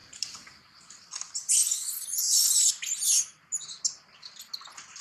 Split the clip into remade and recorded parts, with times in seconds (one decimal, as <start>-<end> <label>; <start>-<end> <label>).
0.0-5.0 recorded